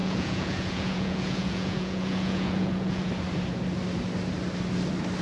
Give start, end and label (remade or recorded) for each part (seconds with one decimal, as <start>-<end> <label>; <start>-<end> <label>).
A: 0.0-3.1 remade; 3.1-5.2 recorded